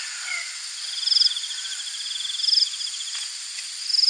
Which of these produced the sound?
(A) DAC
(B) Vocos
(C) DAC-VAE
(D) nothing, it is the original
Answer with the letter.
D